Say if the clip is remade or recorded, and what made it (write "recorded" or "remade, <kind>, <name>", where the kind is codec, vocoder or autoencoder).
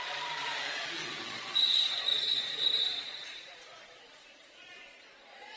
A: remade, vocoder, Vocos